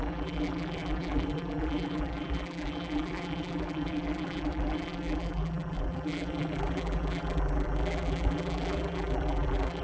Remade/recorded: remade